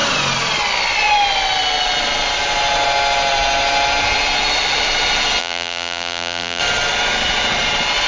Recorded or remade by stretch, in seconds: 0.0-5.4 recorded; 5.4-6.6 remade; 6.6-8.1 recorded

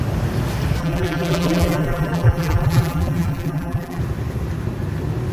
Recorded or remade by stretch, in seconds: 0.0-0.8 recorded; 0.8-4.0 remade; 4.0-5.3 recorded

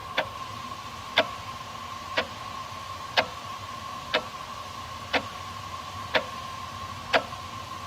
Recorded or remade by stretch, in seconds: 0.0-3.7 remade; 3.7-5.3 recorded; 5.3-6.6 remade; 6.6-7.9 recorded

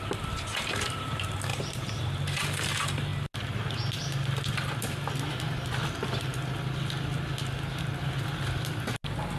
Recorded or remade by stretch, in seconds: 0.0-1.5 recorded; 1.5-2.0 remade; 2.0-9.4 recorded

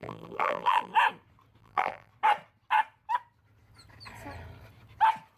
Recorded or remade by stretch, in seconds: 0.0-0.9 remade; 0.9-1.6 recorded; 1.6-2.1 remade; 2.1-5.4 recorded

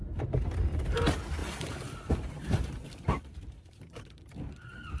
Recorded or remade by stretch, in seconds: 0.0-0.8 remade; 0.8-1.4 recorded; 1.4-4.0 remade; 4.0-5.0 recorded

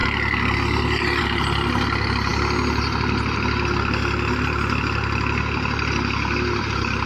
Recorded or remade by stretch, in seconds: 0.0-7.1 recorded

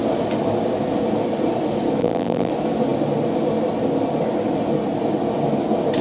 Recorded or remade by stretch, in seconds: 0.0-2.0 recorded; 2.0-2.5 remade; 2.5-6.0 recorded